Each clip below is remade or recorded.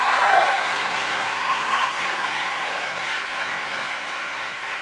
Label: remade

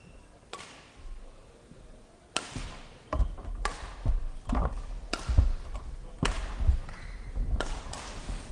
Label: recorded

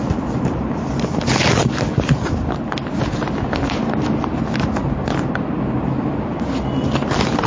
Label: recorded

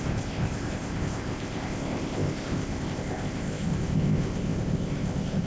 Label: remade